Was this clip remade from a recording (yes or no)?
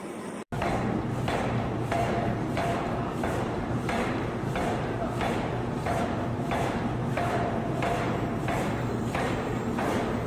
yes